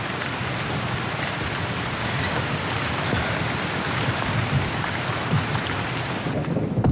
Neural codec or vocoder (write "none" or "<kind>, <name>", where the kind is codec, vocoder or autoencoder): none